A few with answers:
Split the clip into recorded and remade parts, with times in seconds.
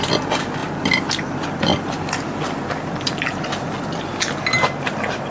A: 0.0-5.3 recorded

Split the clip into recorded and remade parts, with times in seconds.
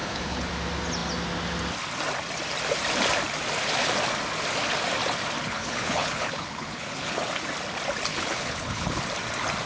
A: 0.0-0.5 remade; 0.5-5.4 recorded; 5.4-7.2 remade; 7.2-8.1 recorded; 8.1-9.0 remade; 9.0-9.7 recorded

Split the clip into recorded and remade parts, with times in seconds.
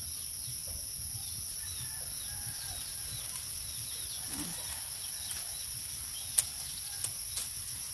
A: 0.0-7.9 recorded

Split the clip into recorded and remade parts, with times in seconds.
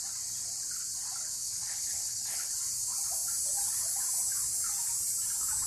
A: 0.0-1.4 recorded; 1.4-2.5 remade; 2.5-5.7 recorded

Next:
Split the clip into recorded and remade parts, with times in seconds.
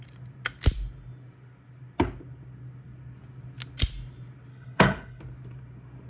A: 0.0-4.5 recorded; 4.5-5.2 remade; 5.2-6.1 recorded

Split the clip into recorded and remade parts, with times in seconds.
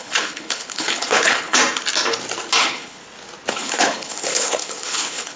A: 0.0-1.6 remade; 1.6-2.6 recorded; 2.6-3.0 remade; 3.0-3.5 recorded; 3.5-5.4 remade